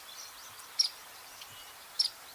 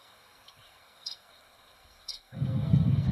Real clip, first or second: first